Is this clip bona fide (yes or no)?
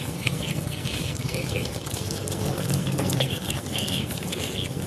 no